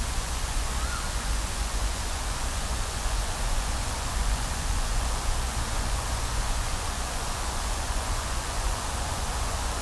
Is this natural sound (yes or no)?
no